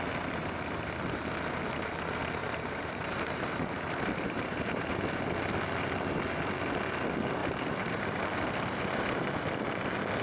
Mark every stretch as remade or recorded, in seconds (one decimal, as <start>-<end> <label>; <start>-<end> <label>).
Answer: 0.0-2.4 recorded; 2.4-5.1 remade; 5.1-7.4 recorded; 7.4-8.2 remade; 8.2-10.2 recorded